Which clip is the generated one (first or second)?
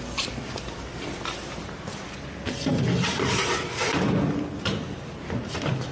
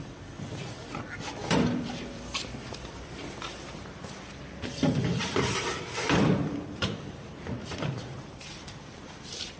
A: second